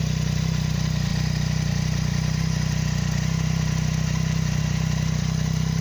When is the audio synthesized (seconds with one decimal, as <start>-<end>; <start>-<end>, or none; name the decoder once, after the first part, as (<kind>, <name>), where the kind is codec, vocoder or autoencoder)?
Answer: none